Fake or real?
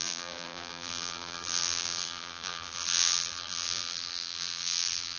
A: fake